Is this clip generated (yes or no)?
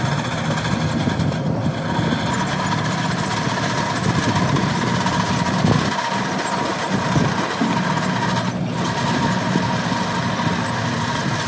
no